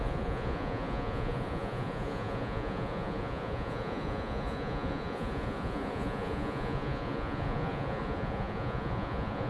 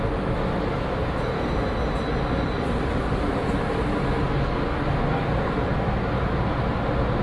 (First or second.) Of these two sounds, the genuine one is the second